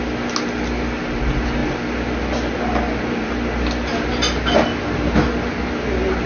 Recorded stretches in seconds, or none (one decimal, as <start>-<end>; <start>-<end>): 0.0-6.3